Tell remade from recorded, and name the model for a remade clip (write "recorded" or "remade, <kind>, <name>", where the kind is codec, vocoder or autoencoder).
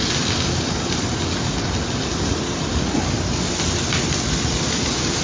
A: recorded